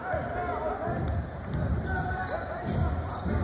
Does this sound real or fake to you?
real